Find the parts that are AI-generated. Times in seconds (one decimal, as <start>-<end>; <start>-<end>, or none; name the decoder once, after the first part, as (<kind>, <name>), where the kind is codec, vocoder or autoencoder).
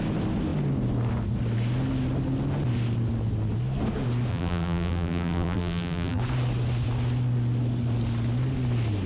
4.3-6.2 (vocoder, BigVGAN v2)